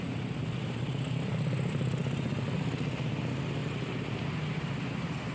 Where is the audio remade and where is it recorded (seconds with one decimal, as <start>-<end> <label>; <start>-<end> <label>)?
0.0-3.6 recorded; 3.6-4.7 remade; 4.7-5.3 recorded